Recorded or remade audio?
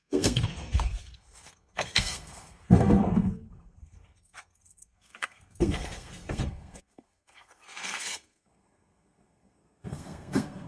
remade